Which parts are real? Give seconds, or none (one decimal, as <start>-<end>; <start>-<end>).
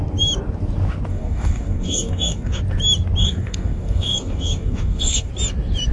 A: 0.0-1.1; 2.6-3.2; 5.3-5.9